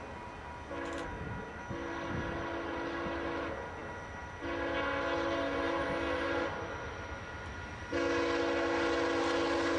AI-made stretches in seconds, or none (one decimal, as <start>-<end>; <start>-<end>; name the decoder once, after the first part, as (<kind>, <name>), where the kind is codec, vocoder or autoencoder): none